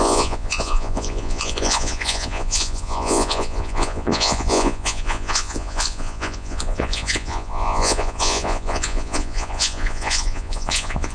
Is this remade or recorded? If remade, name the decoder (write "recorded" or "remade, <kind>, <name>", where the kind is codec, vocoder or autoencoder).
remade, vocoder, Vocos